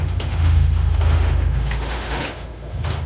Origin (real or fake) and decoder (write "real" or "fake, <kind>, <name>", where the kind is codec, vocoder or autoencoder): fake, autoencoder, DAC-VAE